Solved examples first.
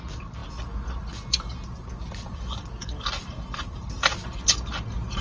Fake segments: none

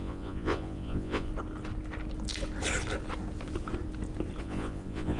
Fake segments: 0.0-1.3 (vocoder, Vocos); 4.4-5.2

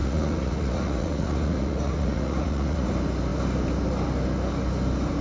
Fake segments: 0.0-2.9 (vocoder, Vocos)

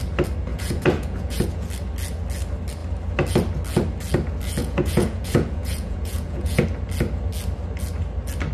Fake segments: 0.5-1.7 (vocoder, Vocos); 4.6-6.6

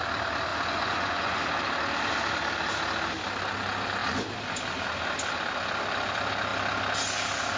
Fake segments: 0.5-1.4 (vocoder, Vocos)

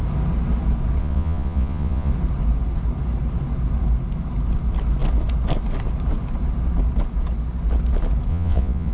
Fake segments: 1.0-2.1 (vocoder, Vocos); 8.3-8.9

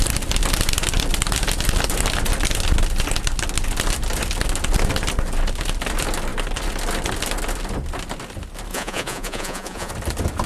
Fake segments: 8.7-9.9 (vocoder, Vocos)

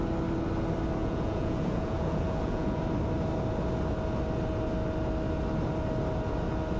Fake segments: 1.0-2.8 (vocoder, Vocos)